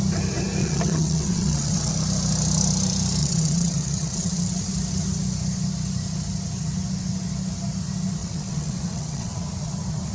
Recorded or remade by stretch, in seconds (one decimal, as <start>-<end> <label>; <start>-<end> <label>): 0.0-0.6 recorded; 0.6-1.9 remade; 1.9-3.2 recorded; 3.2-4.7 remade; 4.7-8.2 recorded; 8.2-9.4 remade; 9.4-10.1 recorded